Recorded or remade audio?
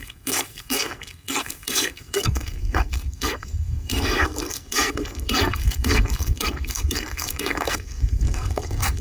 remade